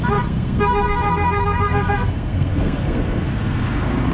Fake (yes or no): yes